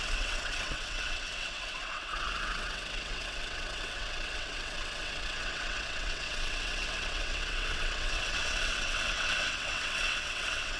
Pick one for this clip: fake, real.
fake